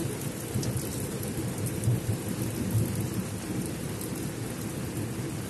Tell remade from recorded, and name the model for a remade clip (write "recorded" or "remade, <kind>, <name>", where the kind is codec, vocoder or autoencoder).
recorded